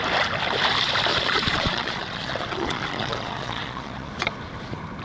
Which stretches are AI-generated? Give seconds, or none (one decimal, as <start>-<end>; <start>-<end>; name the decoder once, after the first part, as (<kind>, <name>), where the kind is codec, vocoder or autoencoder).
1.1-4.1 (vocoder, Vocos)